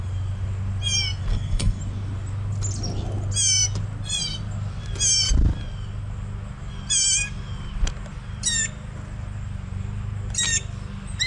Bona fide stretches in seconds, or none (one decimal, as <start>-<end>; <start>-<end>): 0.0-1.3; 1.8-11.3